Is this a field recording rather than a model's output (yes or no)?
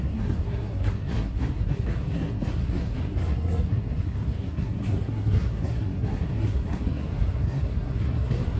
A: no